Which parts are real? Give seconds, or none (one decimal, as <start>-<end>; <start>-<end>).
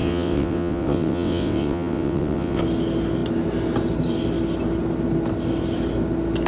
2.6-6.5